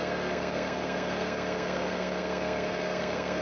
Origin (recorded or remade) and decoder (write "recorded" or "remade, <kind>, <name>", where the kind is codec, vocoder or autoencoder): remade, codec, SNAC